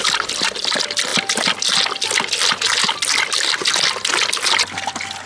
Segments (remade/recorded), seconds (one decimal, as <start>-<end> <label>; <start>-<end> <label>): 0.0-5.3 recorded